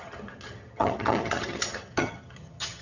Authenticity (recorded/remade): remade